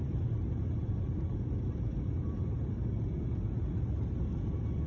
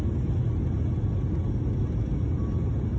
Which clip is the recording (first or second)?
second